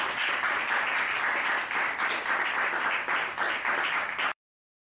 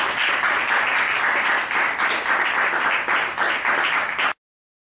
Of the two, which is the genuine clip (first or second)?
second